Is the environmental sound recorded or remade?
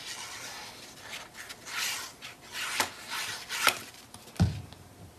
recorded